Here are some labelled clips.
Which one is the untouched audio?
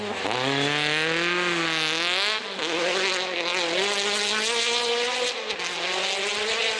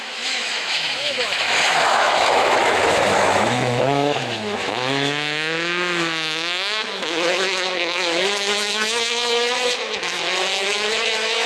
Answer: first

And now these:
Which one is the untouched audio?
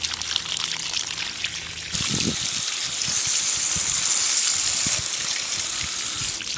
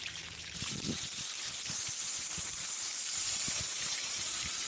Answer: first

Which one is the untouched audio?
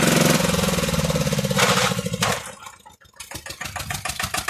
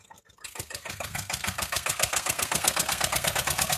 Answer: first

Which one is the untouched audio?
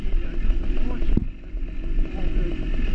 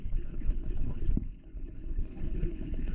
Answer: first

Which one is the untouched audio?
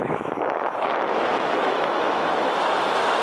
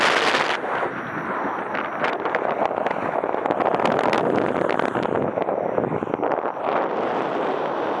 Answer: second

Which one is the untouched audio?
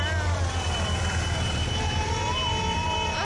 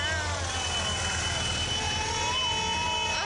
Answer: second